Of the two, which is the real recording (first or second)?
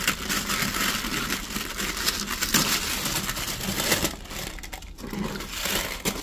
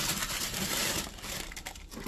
first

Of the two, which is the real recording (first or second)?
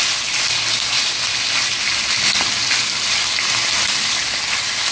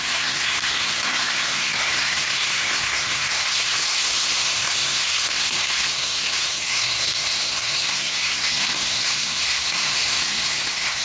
first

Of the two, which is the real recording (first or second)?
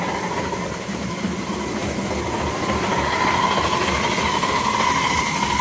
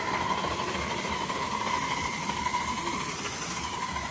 first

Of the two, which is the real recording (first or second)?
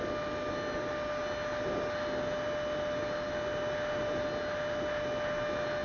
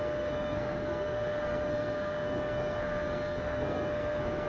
first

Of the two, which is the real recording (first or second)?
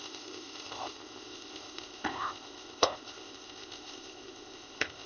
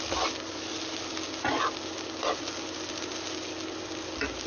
second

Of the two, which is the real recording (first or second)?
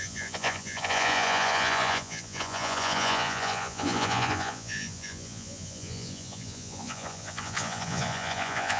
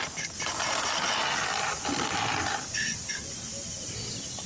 second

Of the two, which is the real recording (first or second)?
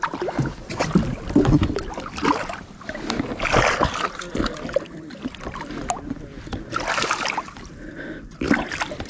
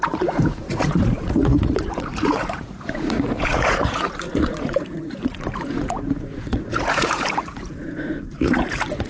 first